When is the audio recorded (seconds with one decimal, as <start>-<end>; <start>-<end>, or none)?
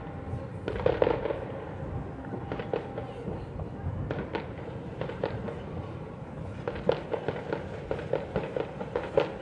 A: 0.0-9.4